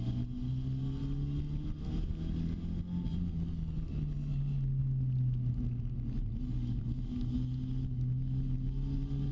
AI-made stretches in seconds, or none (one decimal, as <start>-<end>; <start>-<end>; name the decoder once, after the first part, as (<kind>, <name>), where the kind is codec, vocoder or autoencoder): none